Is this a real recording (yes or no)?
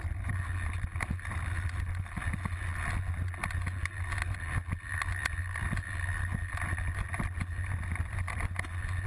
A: yes